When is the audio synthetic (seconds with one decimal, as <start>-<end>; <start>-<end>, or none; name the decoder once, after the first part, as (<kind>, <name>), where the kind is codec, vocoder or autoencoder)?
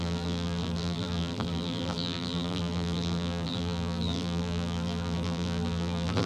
0.0-6.3 (vocoder, BigVGAN v2)